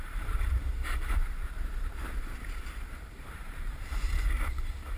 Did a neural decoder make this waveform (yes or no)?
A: yes